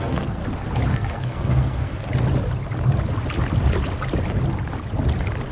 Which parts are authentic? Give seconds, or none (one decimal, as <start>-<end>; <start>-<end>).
0.4-0.9; 1.9-5.5